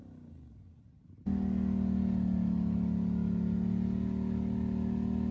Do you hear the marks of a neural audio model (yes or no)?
no